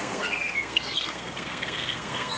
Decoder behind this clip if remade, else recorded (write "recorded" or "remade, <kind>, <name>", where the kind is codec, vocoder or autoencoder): remade, codec, SNAC